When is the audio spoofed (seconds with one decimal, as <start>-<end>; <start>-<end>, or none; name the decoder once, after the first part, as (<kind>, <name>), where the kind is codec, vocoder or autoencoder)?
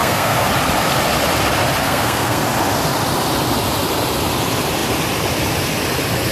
0.0-0.5 (codec, SNAC); 1.8-2.4